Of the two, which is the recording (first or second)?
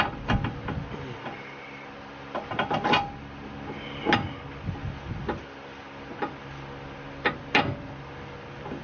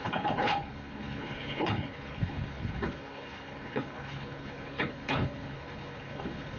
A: first